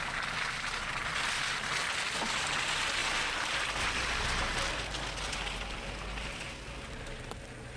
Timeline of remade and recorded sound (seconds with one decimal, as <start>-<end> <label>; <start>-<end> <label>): 0.0-7.8 recorded